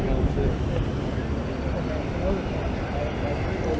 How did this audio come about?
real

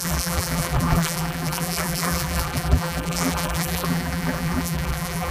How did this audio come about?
fake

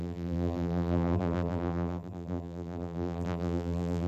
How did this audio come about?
fake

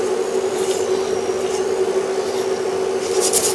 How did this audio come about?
real